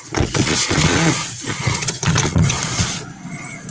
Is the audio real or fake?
fake